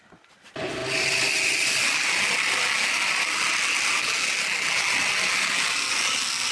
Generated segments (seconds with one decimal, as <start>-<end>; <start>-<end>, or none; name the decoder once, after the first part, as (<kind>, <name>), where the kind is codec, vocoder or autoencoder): none